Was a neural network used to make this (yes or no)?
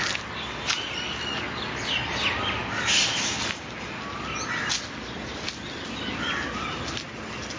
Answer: no